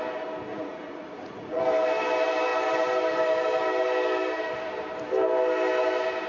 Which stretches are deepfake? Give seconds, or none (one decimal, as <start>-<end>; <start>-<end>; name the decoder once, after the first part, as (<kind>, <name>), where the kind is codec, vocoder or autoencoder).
0.5-1.6 (vocoder, Vocos)